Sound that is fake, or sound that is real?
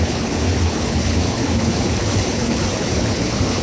fake